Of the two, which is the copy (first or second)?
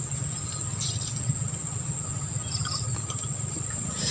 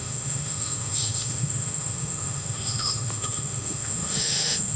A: second